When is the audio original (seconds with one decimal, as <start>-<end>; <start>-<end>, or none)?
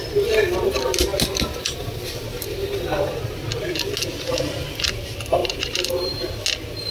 0.0-5.4; 6.2-6.9